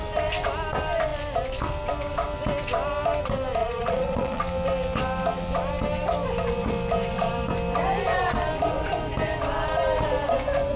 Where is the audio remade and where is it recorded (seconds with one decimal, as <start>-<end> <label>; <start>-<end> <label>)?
0.0-3.6 recorded; 3.6-4.4 remade; 4.4-10.8 recorded